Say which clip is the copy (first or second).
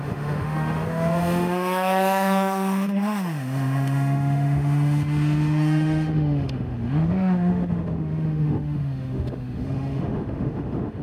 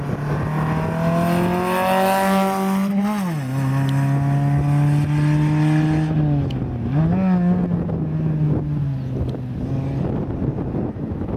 first